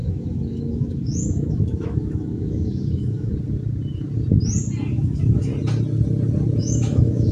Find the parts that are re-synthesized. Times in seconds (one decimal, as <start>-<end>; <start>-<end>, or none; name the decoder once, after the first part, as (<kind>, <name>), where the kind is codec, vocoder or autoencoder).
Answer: 0.0-3.3 (autoencoder, DAC-VAE); 4.9-5.5; 6.6-7.3